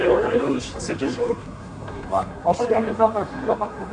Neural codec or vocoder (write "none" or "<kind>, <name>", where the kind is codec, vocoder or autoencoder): codec, SNAC